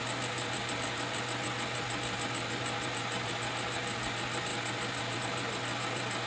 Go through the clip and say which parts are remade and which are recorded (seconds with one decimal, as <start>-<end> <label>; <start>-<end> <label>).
0.0-6.3 recorded